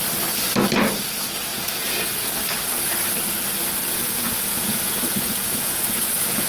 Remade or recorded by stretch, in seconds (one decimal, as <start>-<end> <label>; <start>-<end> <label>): 0.0-1.5 recorded; 1.5-2.3 remade; 2.3-3.9 recorded; 3.9-6.5 remade